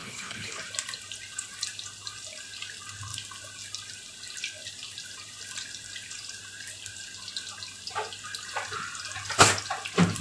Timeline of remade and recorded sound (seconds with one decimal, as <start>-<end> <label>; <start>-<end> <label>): 0.0-0.6 remade; 0.6-10.2 recorded